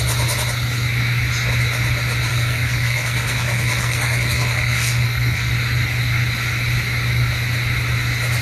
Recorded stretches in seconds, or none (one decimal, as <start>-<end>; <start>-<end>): 0.0-2.3; 5.5-8.4